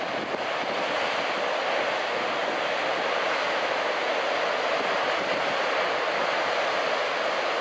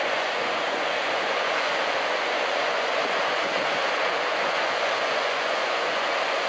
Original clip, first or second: first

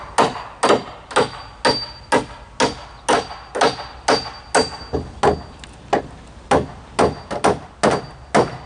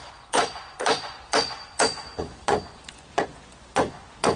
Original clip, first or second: first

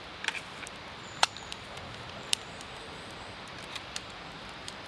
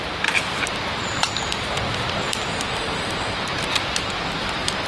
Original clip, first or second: second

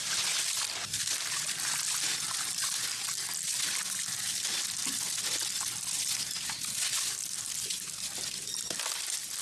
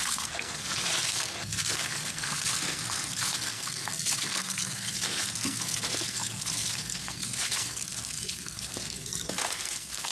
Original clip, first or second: first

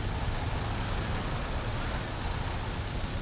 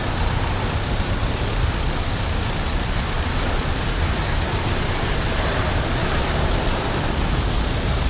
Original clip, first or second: first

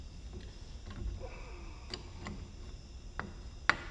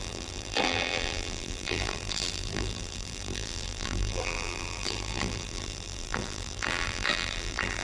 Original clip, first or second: first